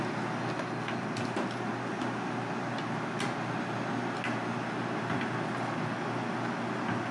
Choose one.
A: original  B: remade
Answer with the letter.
A